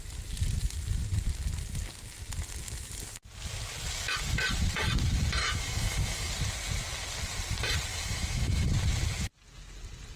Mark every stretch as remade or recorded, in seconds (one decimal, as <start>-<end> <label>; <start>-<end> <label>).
0.0-5.4 recorded; 5.4-6.3 remade; 6.3-7.9 recorded; 7.9-8.7 remade; 8.7-10.2 recorded